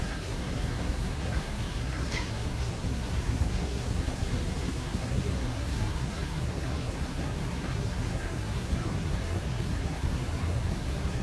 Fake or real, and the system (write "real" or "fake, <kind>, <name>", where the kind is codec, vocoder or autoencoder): fake, codec, SNAC